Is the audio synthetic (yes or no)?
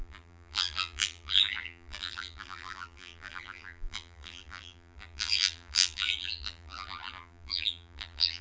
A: yes